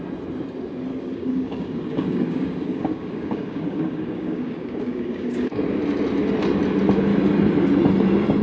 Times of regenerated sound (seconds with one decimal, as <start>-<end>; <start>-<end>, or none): 0.9-5.6